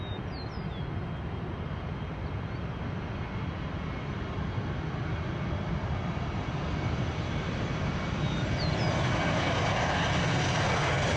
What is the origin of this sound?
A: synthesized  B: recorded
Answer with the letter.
B